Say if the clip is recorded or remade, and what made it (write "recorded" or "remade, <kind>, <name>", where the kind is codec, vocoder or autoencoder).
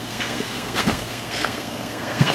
remade, codec, SNAC